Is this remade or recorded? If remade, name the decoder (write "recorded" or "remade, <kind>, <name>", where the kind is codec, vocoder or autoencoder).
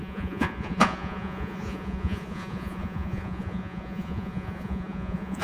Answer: remade, vocoder, Vocos